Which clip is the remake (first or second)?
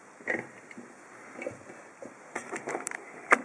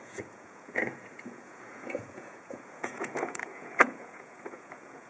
second